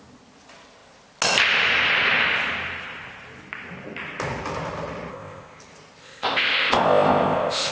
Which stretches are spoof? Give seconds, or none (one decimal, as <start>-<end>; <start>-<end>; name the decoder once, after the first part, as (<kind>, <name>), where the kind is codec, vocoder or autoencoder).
5.1-5.6 (codec, ZipCodec); 6.0-7.7